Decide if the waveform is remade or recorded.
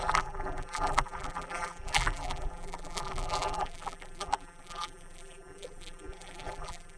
remade